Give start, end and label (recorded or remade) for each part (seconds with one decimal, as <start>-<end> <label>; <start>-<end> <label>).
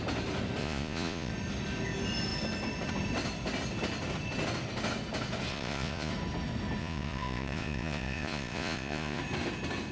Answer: 0.0-0.6 recorded; 0.6-1.3 remade; 1.3-5.5 recorded; 5.5-6.1 remade; 6.1-6.8 recorded; 6.8-9.2 remade; 9.2-9.9 recorded